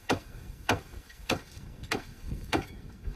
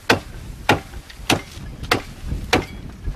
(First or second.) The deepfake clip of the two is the first